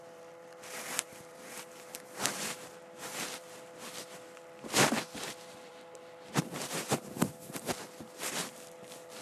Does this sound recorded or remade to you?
remade